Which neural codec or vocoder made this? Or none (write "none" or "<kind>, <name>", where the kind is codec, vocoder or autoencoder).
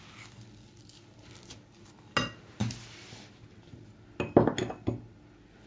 none